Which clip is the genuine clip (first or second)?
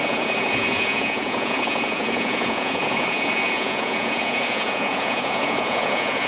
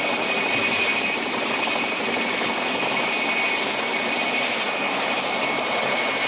second